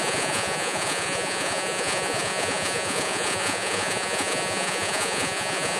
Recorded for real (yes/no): no